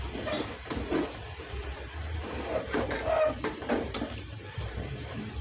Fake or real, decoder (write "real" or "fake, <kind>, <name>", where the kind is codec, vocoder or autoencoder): fake, vocoder, BigVGAN v2